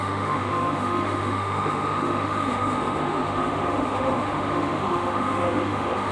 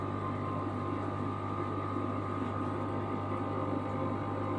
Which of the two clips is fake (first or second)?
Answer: first